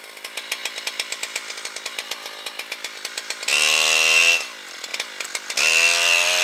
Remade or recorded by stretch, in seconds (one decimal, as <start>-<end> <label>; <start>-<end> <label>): 0.0-6.4 recorded